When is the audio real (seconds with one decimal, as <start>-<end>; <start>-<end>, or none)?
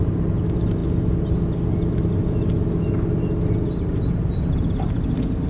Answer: 0.0-5.5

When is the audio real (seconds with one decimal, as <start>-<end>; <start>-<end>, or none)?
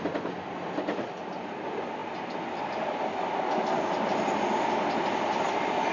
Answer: 0.0-5.9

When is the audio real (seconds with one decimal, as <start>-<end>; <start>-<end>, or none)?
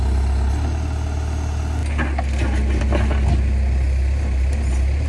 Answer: 0.0-5.1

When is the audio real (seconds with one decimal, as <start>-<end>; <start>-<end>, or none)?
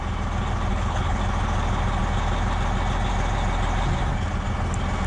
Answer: 0.0-0.7; 1.2-5.1